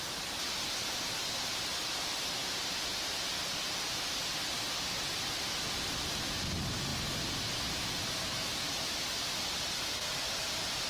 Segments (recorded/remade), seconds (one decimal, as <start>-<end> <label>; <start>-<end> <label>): 0.0-8.2 recorded; 8.2-9.0 remade; 9.0-10.9 recorded